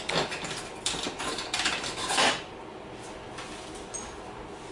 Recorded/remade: recorded